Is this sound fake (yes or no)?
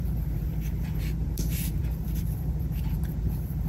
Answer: yes